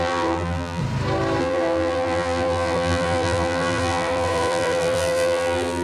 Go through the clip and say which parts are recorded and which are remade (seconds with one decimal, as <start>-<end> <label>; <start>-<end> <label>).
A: 0.0-0.8 remade; 0.8-1.4 recorded; 1.4-5.8 remade